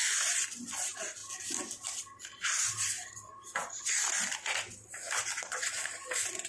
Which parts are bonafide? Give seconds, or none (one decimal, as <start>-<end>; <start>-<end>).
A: 0.0-6.5